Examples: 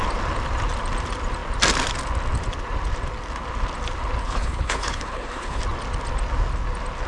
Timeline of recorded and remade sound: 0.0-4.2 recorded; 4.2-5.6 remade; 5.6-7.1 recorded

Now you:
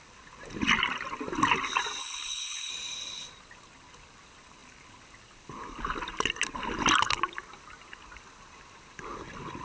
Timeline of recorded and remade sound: 0.0-2.0 recorded; 2.0-2.7 remade; 2.7-9.6 recorded

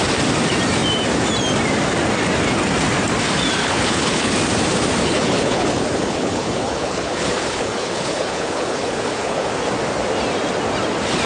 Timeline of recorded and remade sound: 0.0-3.6 recorded; 3.6-4.3 remade; 4.3-5.0 recorded; 5.0-9.5 remade; 9.5-11.3 recorded

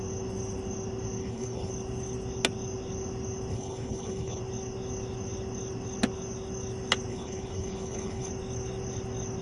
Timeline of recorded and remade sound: 0.0-1.2 recorded; 1.2-1.7 remade; 1.7-3.5 recorded; 3.5-4.4 remade; 4.4-7.1 recorded; 7.1-8.3 remade; 8.3-9.4 recorded

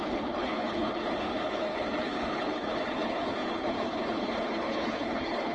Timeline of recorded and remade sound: 0.0-5.5 remade